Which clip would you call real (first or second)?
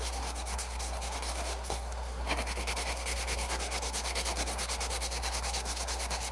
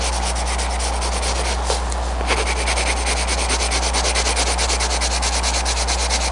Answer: second